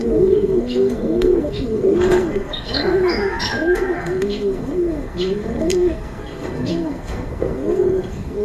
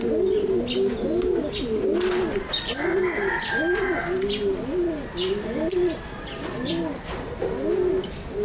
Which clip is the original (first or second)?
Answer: second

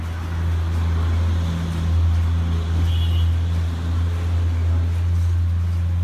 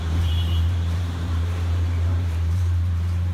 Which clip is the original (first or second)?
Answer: first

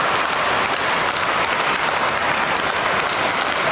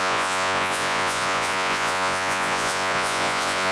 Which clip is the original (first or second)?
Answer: first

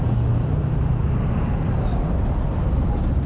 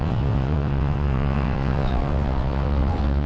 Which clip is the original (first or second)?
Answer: first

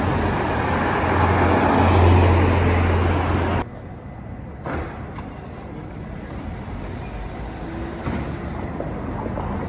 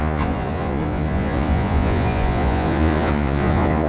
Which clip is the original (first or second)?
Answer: first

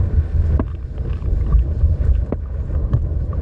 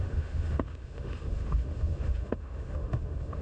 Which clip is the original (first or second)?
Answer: first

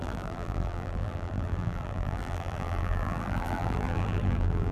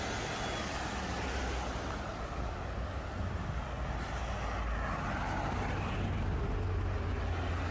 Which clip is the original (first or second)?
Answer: second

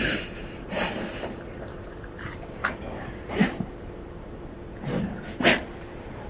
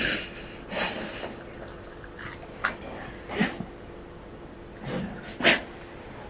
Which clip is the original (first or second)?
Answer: second